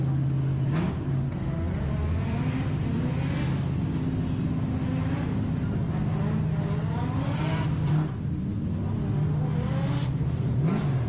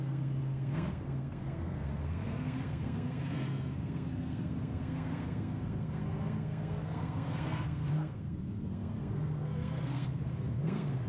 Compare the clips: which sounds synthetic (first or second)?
second